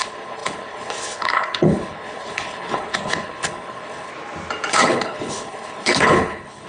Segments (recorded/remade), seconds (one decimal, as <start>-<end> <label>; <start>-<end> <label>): 0.0-4.1 remade; 4.1-4.7 recorded; 4.7-6.7 remade